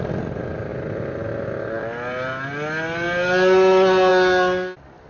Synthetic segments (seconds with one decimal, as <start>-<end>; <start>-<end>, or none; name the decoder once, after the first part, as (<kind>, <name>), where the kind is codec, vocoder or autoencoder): none